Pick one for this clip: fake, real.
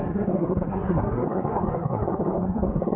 fake